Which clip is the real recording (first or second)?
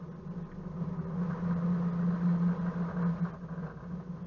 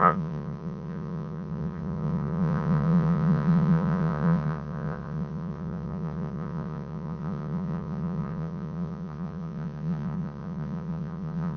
first